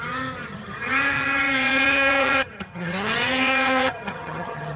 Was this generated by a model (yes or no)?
yes